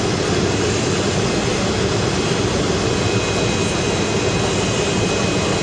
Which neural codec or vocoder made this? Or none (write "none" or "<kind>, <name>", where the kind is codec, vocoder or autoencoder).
none